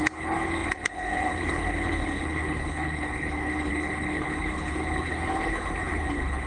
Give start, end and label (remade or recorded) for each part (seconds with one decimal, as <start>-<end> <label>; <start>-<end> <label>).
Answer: 0.0-6.5 remade